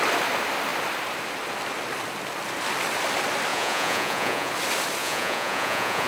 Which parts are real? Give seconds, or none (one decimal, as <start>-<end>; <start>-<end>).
0.0-3.5; 4.5-5.0